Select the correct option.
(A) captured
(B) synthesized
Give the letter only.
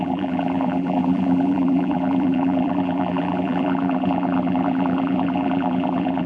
B